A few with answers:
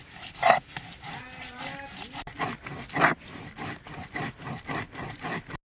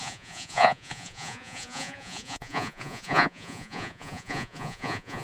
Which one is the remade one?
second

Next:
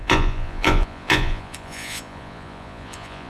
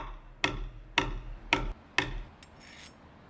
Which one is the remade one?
first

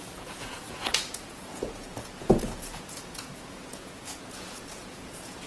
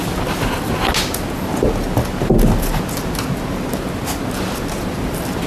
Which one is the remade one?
first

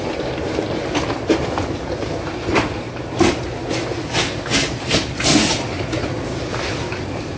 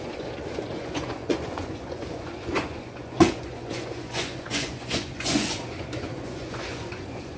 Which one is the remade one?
second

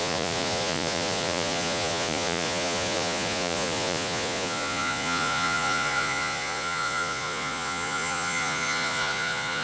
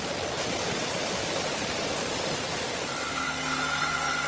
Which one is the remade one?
first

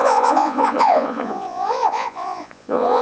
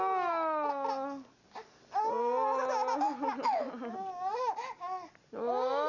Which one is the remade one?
first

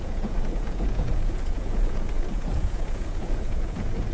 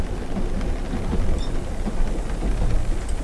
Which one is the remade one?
first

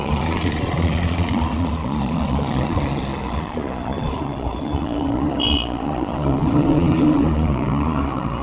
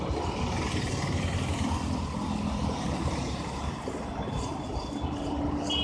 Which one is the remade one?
first